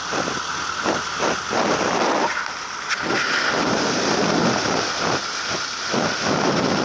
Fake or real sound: real